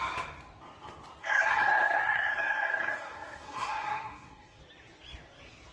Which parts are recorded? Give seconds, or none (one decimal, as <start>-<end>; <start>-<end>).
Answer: 0.0-1.2; 4.6-5.7